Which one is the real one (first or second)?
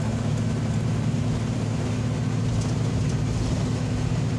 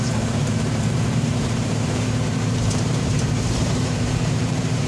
first